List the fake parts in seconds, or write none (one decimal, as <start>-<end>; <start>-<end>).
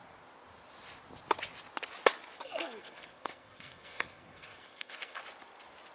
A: 2.4-5.2